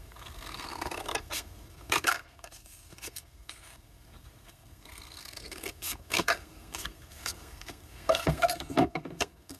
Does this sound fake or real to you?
fake